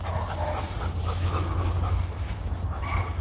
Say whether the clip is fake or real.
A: real